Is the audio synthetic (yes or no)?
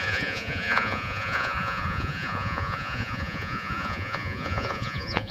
yes